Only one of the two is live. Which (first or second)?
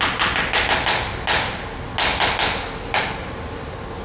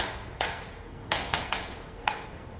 first